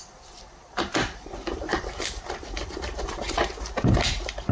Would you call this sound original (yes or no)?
no